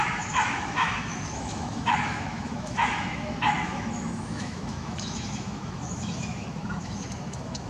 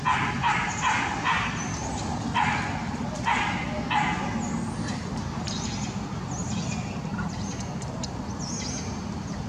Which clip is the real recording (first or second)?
second